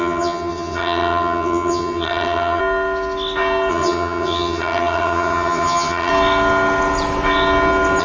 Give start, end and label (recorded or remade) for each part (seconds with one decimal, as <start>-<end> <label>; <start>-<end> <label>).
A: 0.0-2.6 remade; 2.6-3.7 recorded; 3.7-6.1 remade; 6.1-8.0 recorded